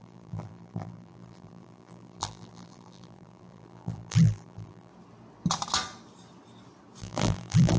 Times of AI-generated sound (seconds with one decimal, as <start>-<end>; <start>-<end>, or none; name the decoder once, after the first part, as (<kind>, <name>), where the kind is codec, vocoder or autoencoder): 0.0-4.9 (vocoder, BigVGAN v2); 7.0-7.8